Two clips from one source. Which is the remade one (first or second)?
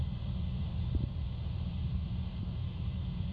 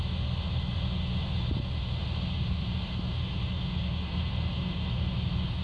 first